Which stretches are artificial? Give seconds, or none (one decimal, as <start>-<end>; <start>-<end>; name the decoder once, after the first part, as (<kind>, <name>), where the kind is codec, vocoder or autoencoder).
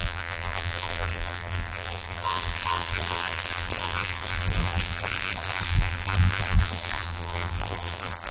0.0-8.3 (vocoder, BigVGAN v2)